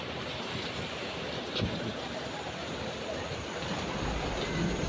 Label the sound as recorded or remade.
remade